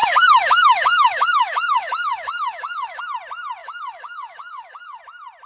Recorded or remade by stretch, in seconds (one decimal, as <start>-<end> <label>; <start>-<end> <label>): 0.0-3.0 remade; 3.0-3.6 recorded; 3.6-5.0 remade; 5.0-5.5 recorded